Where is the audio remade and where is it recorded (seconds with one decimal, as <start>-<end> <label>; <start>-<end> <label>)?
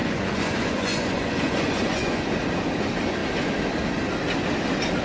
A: 0.0-2.3 remade; 2.3-5.0 recorded